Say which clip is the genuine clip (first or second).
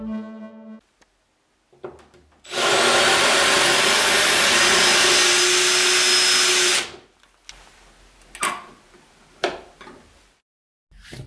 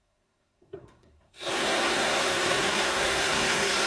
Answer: first